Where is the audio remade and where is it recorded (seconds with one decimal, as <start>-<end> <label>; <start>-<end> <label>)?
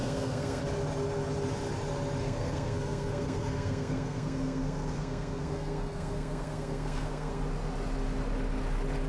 0.0-0.6 remade; 0.6-2.2 recorded; 2.2-7.4 remade; 7.4-9.1 recorded